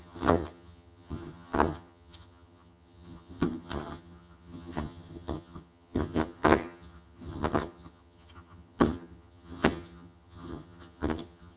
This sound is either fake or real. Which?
fake